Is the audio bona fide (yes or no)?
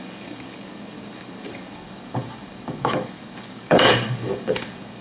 no